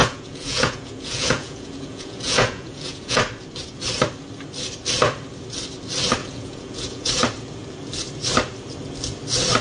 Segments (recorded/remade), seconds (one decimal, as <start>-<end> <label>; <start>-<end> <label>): 0.0-3.2 remade; 3.2-6.2 recorded; 6.2-7.1 remade; 7.1-9.6 recorded